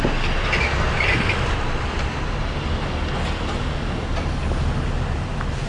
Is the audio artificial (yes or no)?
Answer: no